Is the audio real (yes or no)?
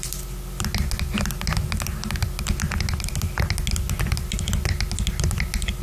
yes